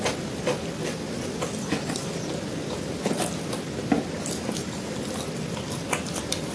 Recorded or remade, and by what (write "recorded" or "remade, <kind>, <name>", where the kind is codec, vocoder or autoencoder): recorded